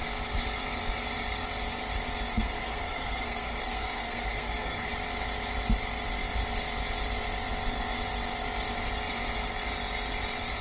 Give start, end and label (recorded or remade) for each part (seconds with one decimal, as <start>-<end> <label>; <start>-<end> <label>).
0.0-2.3 recorded; 2.3-4.9 remade; 4.9-10.6 recorded